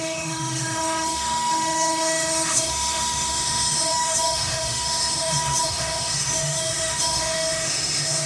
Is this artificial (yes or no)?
yes